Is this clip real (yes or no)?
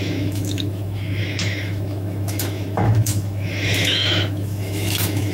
no